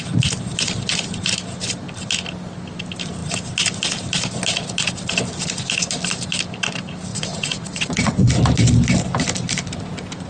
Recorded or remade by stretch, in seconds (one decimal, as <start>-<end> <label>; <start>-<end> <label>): 0.0-7.1 recorded; 7.1-8.3 remade; 8.3-10.3 recorded